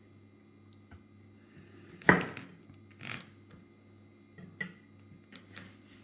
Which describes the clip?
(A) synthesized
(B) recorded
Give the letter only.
B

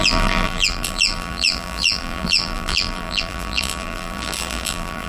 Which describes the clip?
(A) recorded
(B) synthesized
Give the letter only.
B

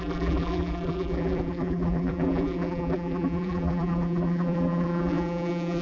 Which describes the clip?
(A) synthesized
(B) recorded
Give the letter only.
A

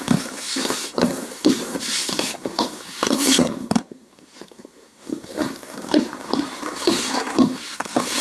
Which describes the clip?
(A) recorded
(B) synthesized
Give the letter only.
B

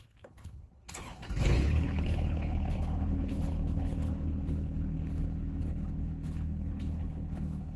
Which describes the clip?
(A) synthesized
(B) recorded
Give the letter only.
A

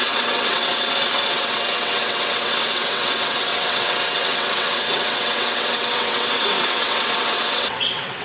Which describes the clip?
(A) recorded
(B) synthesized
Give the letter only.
B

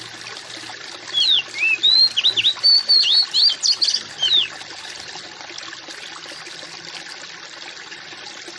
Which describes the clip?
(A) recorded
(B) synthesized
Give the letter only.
A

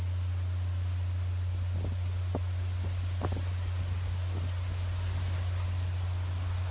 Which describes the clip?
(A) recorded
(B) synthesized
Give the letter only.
A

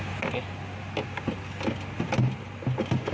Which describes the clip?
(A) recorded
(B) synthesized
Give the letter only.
A